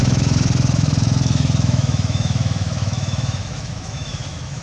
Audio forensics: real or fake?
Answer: fake